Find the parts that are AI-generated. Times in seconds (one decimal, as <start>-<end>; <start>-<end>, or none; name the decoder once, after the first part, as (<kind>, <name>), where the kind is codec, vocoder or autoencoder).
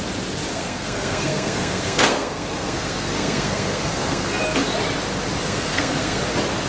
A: 0.5-4.4 (codec, SNAC); 5.4-6.2